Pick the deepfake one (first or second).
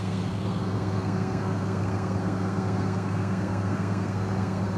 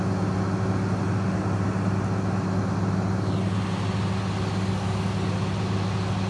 first